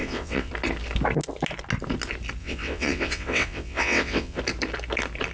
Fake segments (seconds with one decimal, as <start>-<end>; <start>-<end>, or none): 0.0-0.5; 2.4-4.4